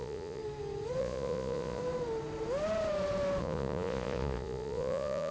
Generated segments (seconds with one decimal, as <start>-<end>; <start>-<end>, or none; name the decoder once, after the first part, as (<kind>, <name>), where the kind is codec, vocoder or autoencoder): 0.0-0.4 (vocoder, Vocos); 1.0-1.8; 3.4-5.3